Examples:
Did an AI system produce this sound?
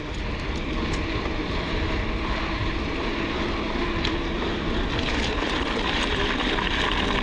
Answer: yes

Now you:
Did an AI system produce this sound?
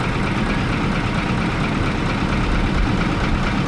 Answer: no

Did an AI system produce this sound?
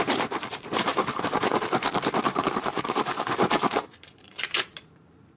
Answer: yes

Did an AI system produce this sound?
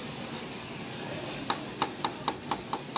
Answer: no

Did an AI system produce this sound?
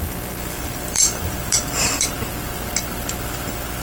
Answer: yes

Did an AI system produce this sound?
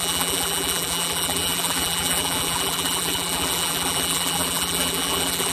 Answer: yes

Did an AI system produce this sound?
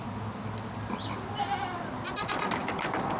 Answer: no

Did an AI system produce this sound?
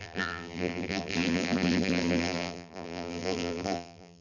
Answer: yes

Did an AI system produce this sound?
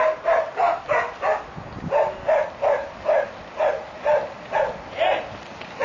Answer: no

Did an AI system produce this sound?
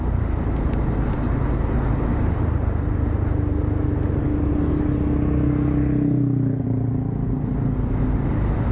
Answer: no